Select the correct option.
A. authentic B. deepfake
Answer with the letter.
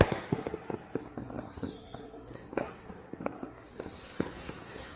B